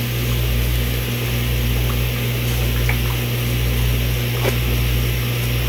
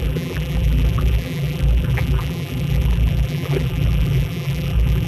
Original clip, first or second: first